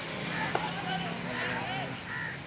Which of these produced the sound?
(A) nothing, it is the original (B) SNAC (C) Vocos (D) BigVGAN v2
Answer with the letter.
A